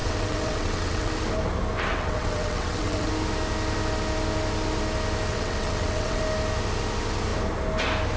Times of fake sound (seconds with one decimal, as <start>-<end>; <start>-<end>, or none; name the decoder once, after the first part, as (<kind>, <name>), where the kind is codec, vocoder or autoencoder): 0.0-1.1 (vocoder, WaveNeXt); 1.9-3.1; 5.3-6.2